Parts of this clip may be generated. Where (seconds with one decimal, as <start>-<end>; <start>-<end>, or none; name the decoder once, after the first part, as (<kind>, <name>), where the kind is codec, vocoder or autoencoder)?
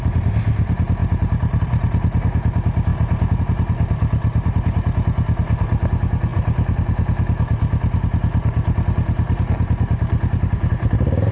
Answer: none